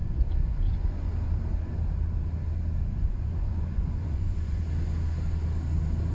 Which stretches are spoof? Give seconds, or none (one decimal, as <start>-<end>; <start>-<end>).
0.0-1.1; 2.8-4.6